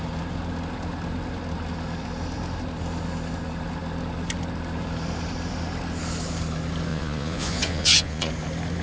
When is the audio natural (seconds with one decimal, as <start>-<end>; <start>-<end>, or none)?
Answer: 0.0-6.9; 8.3-8.8